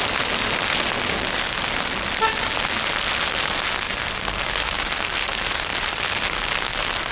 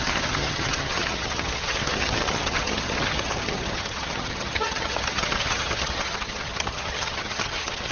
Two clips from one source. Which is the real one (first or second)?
first